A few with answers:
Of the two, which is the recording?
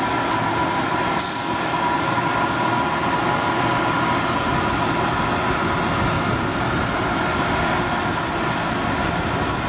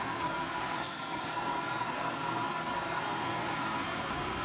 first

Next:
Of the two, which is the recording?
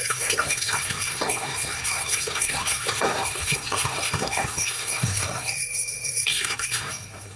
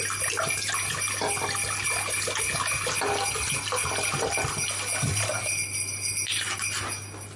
second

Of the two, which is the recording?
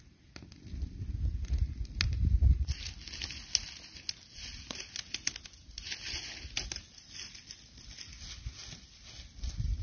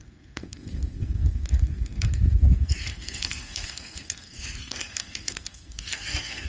first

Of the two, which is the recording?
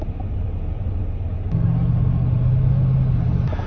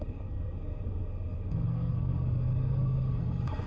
first